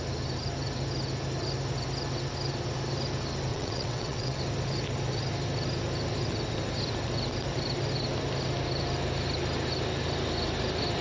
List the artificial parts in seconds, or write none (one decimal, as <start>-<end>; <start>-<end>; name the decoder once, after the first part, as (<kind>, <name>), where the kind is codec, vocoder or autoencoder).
3.5-4.4 (vocoder, WaveNeXt)